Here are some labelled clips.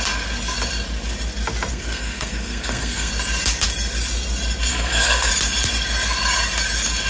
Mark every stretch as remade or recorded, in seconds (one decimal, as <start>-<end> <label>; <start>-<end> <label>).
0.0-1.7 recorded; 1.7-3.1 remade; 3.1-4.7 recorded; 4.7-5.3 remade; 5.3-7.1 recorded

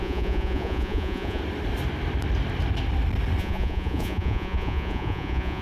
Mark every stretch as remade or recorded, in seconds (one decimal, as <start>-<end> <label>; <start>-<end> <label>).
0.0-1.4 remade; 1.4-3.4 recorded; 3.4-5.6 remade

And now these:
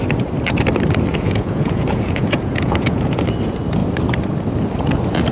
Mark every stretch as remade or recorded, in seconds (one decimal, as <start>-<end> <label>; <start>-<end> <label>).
0.0-1.1 recorded; 1.1-3.2 remade; 3.2-5.3 recorded